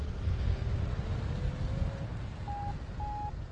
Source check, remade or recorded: recorded